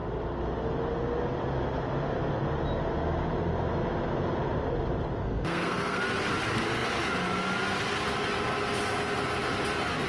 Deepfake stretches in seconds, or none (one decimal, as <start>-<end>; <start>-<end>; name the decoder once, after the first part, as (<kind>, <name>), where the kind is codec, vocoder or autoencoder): 5.2-6.0 (codec, SNAC)